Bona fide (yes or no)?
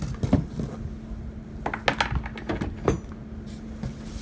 yes